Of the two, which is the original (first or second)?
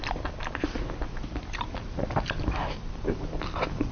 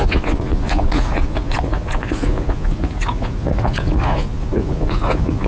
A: first